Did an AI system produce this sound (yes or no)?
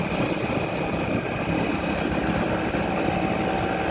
no